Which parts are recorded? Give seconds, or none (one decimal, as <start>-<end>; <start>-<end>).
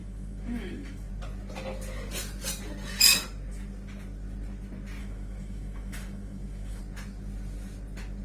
1.1-5.0; 6.8-8.2